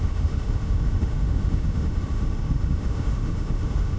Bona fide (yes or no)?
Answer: no